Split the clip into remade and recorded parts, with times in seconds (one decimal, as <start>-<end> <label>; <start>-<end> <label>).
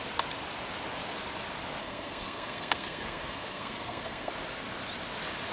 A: 0.0-1.8 recorded; 1.8-4.3 remade; 4.3-5.5 recorded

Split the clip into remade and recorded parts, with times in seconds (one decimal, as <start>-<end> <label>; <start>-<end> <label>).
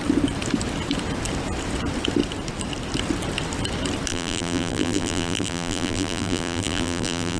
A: 0.0-4.1 recorded; 4.1-7.4 remade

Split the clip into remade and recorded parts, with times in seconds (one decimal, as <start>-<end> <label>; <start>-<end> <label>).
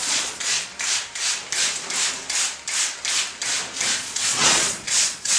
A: 0.0-0.7 remade; 0.7-3.9 recorded; 3.9-5.4 remade